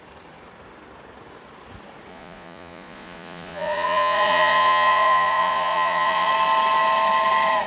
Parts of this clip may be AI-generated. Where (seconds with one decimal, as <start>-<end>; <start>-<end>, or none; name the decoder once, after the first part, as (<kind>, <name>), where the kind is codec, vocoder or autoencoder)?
2.1-6.3 (vocoder, Vocos)